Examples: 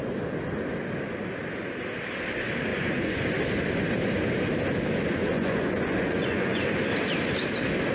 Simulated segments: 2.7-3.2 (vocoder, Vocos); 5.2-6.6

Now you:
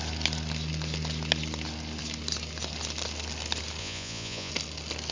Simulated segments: 3.8-4.5 (vocoder, Vocos)

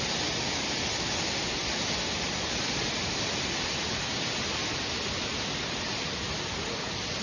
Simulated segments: none

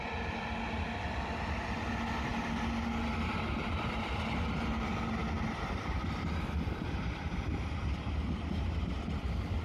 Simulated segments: none